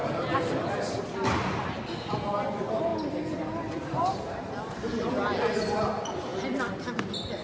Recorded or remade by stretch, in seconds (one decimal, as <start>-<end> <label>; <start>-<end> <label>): 0.0-1.0 remade; 1.0-7.4 recorded